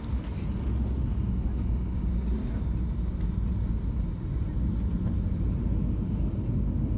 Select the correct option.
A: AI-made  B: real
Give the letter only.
B